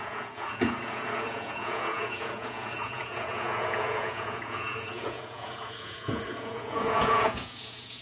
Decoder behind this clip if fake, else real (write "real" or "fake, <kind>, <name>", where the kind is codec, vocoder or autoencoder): fake, vocoder, Vocos